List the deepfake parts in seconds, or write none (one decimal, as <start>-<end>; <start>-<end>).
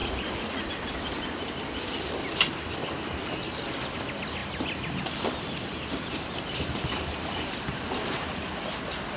0.0-0.7